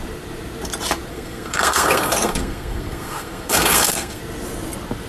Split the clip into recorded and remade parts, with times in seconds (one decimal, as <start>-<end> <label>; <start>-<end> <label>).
0.0-1.1 recorded; 1.1-4.2 remade; 4.2-5.1 recorded